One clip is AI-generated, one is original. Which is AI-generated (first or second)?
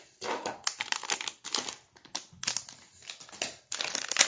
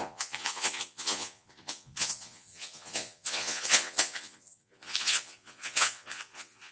second